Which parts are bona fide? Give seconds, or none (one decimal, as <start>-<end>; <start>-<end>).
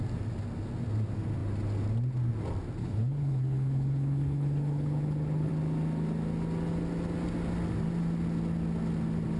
0.0-2.8; 5.5-9.4